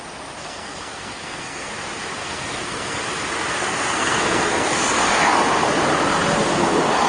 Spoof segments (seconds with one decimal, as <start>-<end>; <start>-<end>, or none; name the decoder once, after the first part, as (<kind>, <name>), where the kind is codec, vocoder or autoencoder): 0.4-1.7 (codec, SNAC); 2.2-3.0; 3.5-5.4